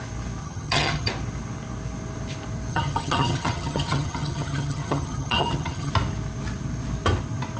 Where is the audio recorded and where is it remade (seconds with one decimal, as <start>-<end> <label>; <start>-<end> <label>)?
0.0-0.4 recorded; 0.4-1.1 remade; 1.1-2.7 recorded; 2.7-5.9 remade; 5.9-7.6 recorded